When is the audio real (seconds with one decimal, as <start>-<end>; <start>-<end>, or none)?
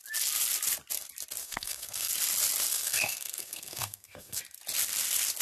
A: 0.0-1.4; 2.1-2.7; 4.4-5.4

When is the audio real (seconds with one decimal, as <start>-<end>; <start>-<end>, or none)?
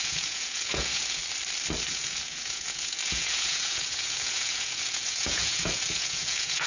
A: 1.2-1.9